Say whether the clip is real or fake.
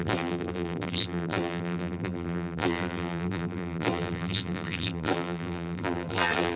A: fake